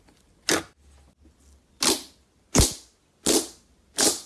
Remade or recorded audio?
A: recorded